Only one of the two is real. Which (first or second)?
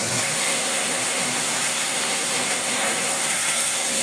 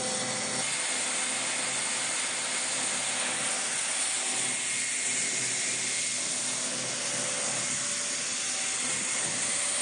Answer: second